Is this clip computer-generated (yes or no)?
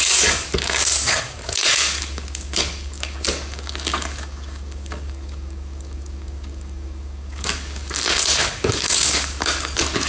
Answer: yes